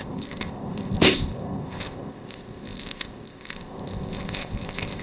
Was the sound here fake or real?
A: fake